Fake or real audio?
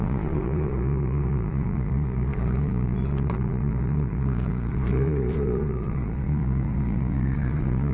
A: fake